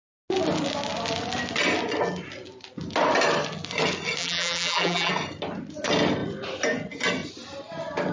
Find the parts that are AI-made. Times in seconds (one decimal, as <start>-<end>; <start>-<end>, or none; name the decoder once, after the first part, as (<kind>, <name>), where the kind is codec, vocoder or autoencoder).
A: 4.2-5.1 (vocoder, BigVGAN v2)